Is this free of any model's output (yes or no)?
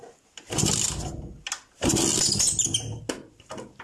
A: yes